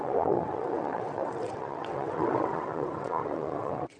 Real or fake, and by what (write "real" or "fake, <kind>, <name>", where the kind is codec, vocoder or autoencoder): fake, vocoder, WaveNeXt